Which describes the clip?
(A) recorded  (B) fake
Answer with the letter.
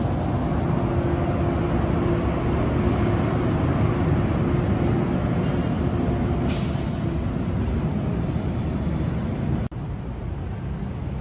A